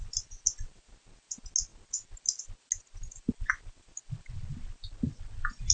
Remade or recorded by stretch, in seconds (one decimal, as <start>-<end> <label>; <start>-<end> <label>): 0.0-5.7 recorded